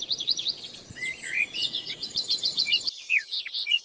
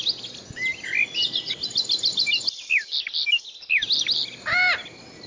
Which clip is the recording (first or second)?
second